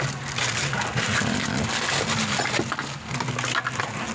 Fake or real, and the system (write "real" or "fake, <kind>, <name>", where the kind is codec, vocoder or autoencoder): real